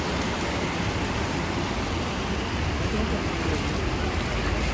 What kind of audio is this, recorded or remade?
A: recorded